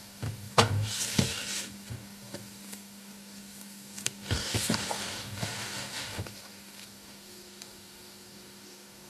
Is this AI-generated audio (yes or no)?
yes